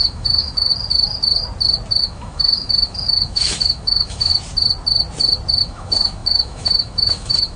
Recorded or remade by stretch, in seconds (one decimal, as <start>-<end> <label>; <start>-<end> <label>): 0.0-0.7 remade; 0.7-2.0 recorded; 2.0-4.3 remade; 4.3-5.6 recorded; 5.6-7.6 remade